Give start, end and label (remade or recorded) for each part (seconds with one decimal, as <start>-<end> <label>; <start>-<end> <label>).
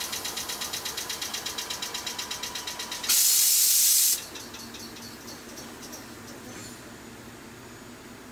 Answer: 0.0-8.3 recorded